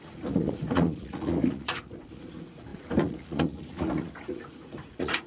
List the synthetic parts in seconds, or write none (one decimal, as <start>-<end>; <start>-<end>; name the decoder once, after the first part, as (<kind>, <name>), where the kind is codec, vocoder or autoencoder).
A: 0.0-5.3 (vocoder, Vocos)